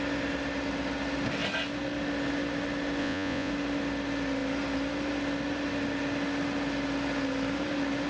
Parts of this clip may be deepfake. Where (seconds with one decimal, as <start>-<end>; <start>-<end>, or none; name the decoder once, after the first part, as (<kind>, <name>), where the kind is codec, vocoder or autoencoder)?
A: 3.0-3.5 (vocoder, Vocos)